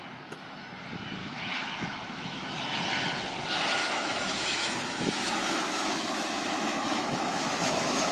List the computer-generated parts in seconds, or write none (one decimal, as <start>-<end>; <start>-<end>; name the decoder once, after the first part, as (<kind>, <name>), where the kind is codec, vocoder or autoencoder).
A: 1.2-2.4 (autoencoder, DAC-VAE); 3.8-8.1